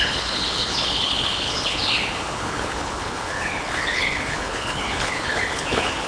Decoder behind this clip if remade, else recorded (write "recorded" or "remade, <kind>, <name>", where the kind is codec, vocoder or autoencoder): remade, codec, HILCodec